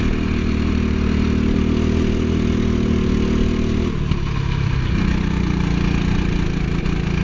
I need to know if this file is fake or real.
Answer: real